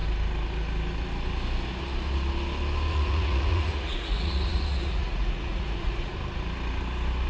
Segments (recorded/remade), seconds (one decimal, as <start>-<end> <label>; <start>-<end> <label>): 0.0-2.9 recorded; 2.9-6.1 remade; 6.1-7.3 recorded